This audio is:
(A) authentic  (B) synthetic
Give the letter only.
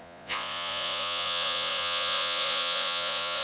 B